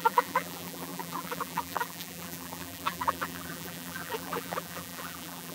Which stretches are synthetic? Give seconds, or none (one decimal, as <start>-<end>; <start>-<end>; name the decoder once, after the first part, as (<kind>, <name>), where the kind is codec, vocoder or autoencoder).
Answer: 0.0-5.5 (vocoder, BigVGAN v2)